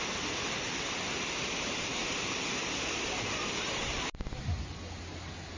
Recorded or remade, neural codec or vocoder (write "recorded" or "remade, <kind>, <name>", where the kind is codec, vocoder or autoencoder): recorded